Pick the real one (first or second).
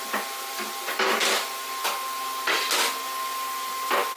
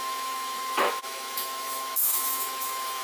first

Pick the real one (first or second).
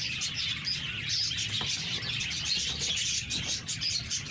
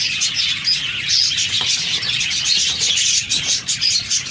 first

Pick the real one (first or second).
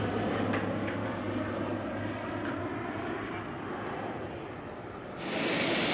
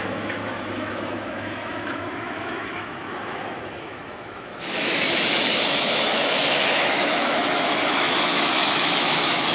first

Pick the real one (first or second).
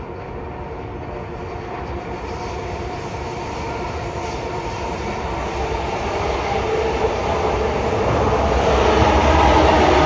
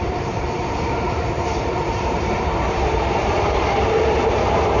first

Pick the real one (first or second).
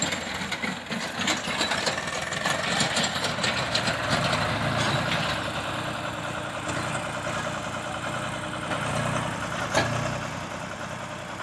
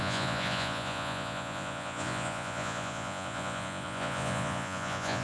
first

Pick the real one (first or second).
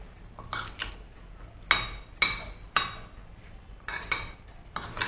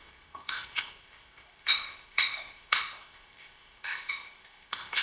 first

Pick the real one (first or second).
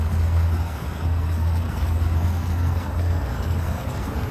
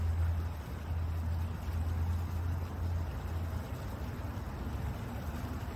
second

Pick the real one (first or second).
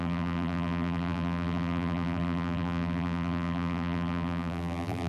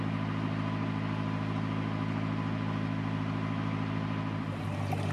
second